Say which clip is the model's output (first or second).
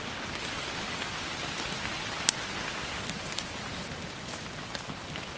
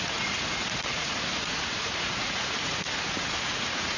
second